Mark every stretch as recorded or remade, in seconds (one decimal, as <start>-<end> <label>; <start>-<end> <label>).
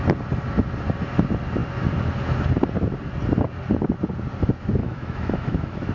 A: 0.0-4.8 recorded; 4.8-5.9 remade